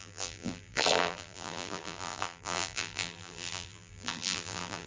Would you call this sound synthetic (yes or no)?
yes